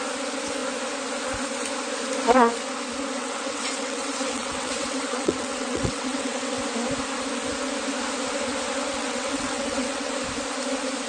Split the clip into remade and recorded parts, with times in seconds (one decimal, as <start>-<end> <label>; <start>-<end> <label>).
0.0-3.2 recorded; 3.2-6.6 remade; 6.6-8.9 recorded; 8.9-10.1 remade; 10.1-11.1 recorded